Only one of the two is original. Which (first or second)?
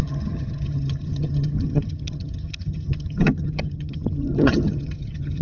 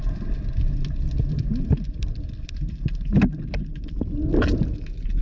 second